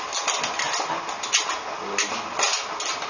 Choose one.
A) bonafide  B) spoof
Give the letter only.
A